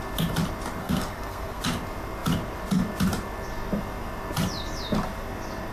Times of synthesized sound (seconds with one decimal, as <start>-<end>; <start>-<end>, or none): 0.8-1.6